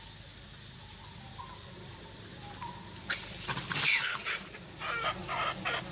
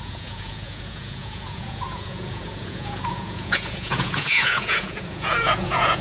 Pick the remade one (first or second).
second